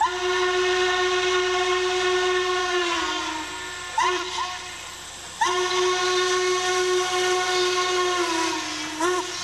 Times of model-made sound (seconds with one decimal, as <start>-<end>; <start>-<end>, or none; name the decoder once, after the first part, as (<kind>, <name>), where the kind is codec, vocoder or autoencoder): 2.6-3.2 (codec, DAC)